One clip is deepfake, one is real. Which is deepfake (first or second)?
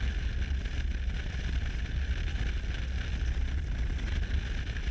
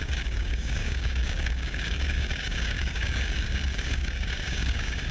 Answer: second